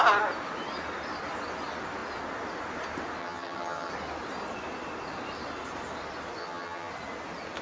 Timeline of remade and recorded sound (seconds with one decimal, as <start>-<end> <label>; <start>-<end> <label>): 0.0-3.2 recorded; 3.2-3.9 remade; 3.9-6.4 recorded; 6.4-6.9 remade; 6.9-7.6 recorded